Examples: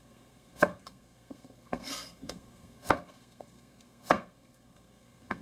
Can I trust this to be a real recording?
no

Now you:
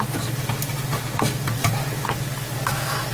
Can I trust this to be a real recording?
yes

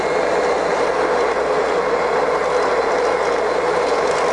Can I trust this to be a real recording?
yes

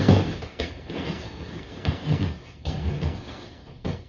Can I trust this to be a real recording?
no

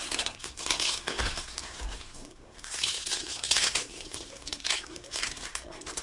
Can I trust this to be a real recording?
no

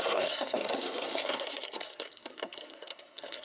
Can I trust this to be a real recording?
no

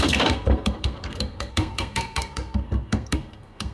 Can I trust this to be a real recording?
no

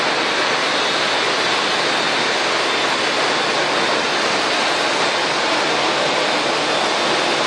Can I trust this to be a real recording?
yes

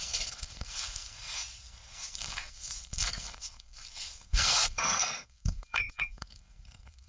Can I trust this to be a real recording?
no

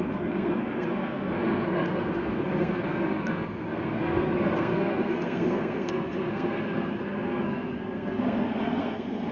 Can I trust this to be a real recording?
no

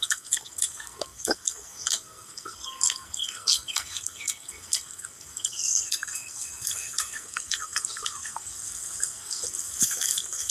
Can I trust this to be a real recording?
no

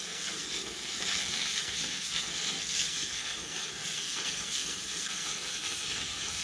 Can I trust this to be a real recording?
no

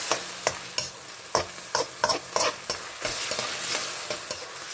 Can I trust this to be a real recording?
yes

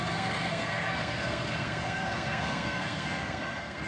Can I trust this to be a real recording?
no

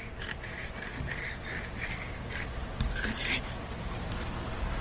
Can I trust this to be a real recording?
yes